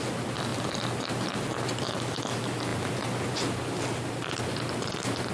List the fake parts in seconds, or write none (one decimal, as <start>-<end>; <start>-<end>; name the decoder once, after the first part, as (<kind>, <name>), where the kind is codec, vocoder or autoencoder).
none